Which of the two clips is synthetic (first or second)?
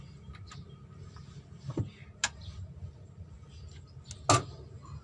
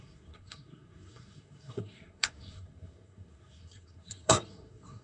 second